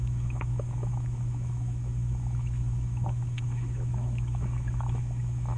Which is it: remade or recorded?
remade